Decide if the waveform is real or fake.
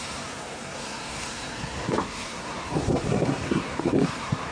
fake